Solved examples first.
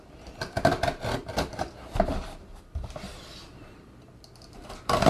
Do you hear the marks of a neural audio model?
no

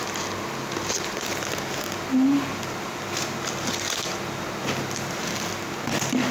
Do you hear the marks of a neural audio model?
no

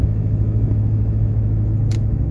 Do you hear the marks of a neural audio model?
yes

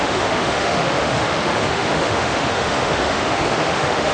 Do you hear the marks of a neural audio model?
yes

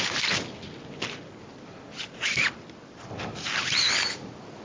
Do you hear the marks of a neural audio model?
no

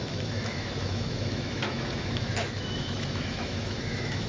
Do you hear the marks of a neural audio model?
yes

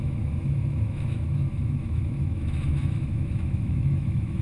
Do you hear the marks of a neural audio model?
yes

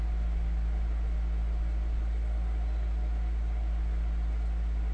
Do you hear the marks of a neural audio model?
no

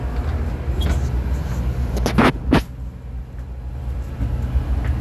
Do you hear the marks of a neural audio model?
no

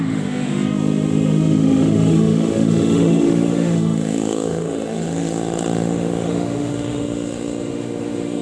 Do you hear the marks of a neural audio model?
yes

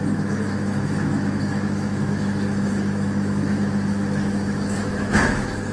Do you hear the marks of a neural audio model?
yes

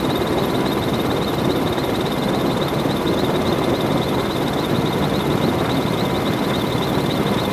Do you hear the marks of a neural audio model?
no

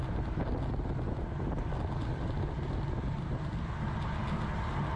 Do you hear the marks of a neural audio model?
no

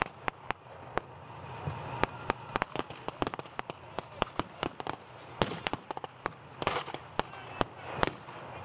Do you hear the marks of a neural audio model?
no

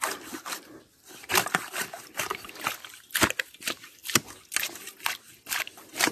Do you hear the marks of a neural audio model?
no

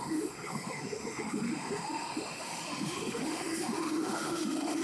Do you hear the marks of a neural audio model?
yes